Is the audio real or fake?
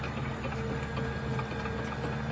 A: real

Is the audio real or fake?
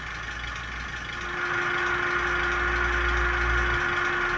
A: real